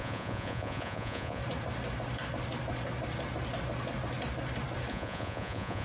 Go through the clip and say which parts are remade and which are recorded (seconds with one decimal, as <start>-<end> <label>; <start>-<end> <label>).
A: 0.0-1.4 remade; 1.4-4.9 recorded; 4.9-5.8 remade